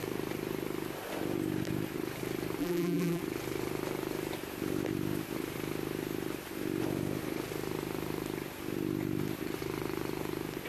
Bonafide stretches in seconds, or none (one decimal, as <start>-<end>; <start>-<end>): 0.0-2.6; 3.2-10.7

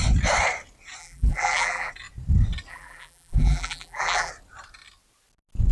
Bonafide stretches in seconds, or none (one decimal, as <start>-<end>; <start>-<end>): 0.0-1.0; 1.9-2.7; 4.3-5.7

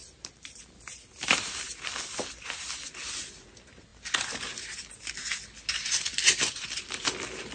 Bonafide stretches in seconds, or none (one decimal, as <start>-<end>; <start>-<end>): 0.6-7.5

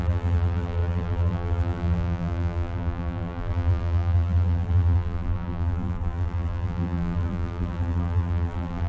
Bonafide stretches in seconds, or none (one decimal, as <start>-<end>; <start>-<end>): none